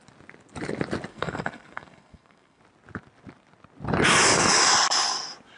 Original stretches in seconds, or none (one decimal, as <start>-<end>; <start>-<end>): 0.0-1.1; 2.6-5.6